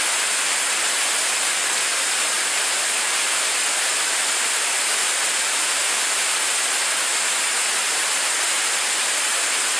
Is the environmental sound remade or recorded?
recorded